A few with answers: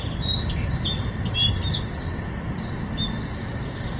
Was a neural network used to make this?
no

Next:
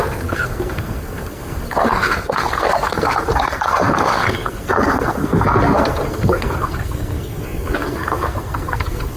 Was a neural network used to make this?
yes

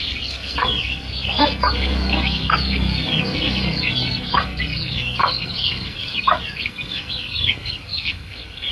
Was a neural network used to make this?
yes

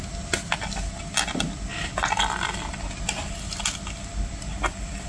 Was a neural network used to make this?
no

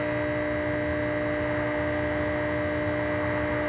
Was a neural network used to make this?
no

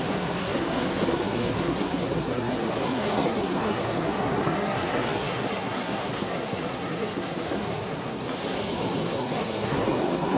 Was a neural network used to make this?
yes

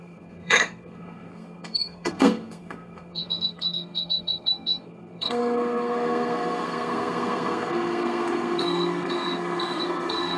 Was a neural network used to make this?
yes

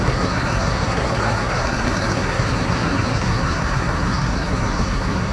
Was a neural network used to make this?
yes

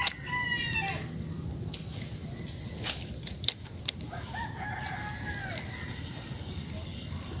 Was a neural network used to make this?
no